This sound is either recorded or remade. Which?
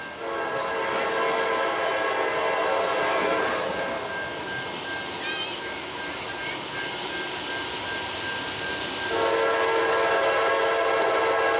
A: recorded